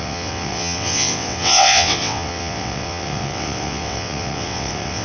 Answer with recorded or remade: remade